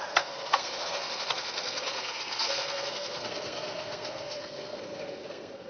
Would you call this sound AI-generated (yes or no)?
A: yes